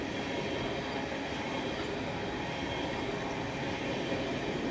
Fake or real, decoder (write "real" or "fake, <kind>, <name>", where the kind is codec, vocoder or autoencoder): real